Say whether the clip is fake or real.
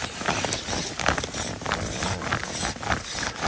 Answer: real